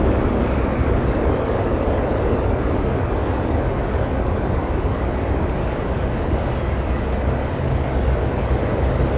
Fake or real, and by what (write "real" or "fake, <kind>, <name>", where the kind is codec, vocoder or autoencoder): fake, codec, DAC